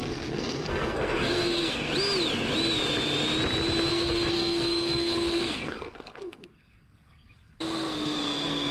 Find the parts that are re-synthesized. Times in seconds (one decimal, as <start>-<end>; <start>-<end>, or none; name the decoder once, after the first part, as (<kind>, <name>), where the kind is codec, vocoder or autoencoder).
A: 0.0-1.9 (codec, SNAC); 3.9-8.7